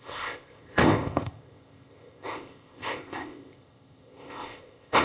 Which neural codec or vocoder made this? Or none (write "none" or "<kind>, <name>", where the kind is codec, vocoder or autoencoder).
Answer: codec, ZipCodec